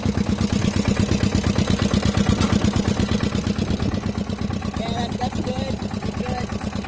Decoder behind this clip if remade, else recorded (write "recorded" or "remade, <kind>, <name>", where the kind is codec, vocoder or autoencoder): recorded